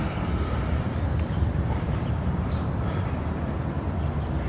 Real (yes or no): yes